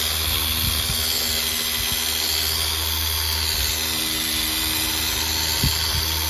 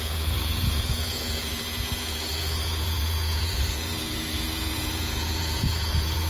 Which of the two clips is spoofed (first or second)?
second